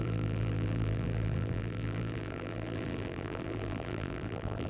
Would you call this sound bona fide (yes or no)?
no